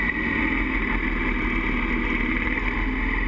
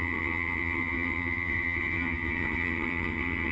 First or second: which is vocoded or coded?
second